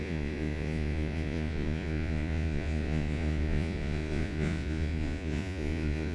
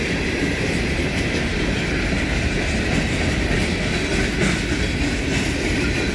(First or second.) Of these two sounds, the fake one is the first